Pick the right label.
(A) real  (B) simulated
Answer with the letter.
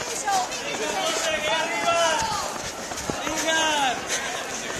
A